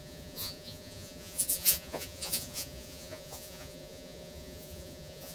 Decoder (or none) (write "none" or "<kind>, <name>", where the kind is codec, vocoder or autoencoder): vocoder, Vocos